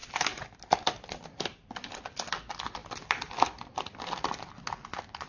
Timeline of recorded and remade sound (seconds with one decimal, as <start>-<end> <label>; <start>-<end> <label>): 0.0-2.8 recorded; 2.8-4.5 remade; 4.5-5.3 recorded